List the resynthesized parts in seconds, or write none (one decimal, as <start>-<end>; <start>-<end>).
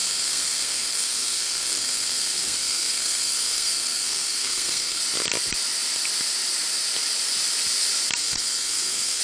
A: 0.0-5.0; 8.2-9.2